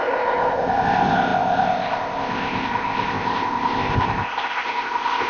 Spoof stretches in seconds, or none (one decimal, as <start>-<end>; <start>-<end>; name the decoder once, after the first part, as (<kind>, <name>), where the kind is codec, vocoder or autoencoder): 0.0-5.3 (codec, ZipCodec)